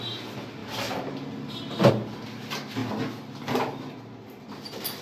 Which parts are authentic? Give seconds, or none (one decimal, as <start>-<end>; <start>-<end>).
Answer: 0.0-5.0